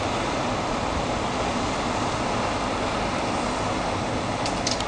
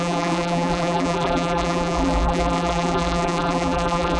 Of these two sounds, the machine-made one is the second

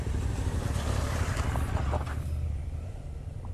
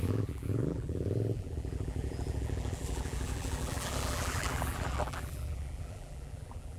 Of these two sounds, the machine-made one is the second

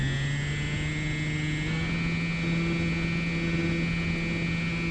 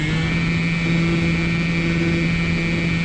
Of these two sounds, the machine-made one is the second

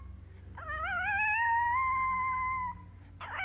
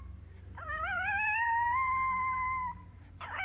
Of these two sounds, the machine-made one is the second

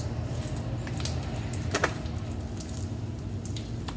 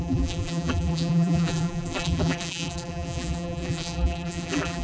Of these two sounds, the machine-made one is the second